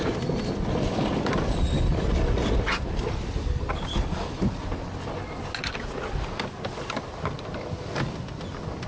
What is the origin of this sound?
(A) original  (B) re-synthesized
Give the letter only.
A